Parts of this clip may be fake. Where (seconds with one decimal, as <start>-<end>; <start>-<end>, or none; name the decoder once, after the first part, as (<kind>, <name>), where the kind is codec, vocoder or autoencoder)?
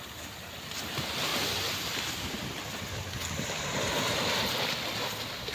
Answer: none